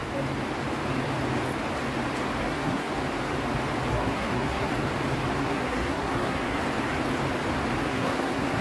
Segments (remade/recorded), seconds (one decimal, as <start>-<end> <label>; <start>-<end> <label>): 0.0-2.4 recorded; 2.4-2.9 remade; 2.9-3.9 recorded; 3.9-4.7 remade; 4.7-5.4 recorded; 5.4-6.6 remade; 6.6-7.9 recorded; 7.9-8.6 remade

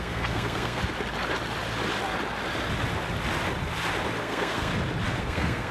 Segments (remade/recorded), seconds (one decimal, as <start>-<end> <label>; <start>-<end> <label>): 0.0-0.8 remade; 0.8-4.2 recorded; 4.2-4.7 remade; 4.7-5.2 recorded; 5.2-5.7 remade

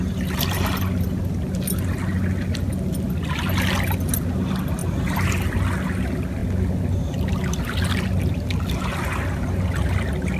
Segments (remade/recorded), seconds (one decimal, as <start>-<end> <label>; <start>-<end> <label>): 0.0-10.4 recorded

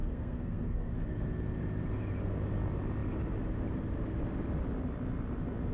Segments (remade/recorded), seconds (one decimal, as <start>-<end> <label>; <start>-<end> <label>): 0.0-0.9 remade; 0.9-5.7 recorded

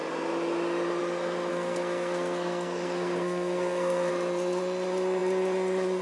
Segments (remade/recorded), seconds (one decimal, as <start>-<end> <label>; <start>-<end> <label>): 0.0-1.5 recorded; 1.5-4.1 remade; 4.1-6.0 recorded

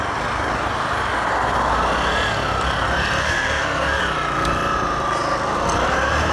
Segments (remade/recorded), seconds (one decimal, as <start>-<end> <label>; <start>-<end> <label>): 0.0-3.2 recorded; 3.2-4.0 remade; 4.0-6.3 recorded

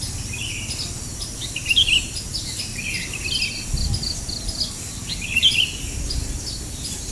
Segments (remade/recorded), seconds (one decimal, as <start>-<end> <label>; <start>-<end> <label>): 0.0-7.1 recorded

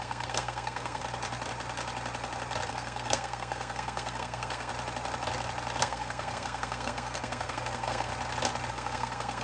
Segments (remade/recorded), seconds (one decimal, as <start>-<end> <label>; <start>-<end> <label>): 0.0-1.0 remade; 1.0-2.7 recorded; 2.7-4.7 remade; 4.7-5.8 recorded; 5.8-8.1 remade; 8.1-8.7 recorded; 8.7-9.4 remade